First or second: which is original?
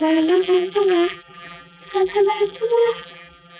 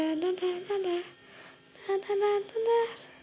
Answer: second